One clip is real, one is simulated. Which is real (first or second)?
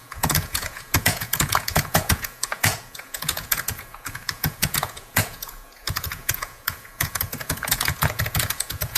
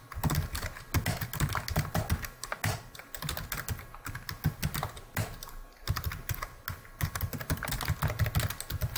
second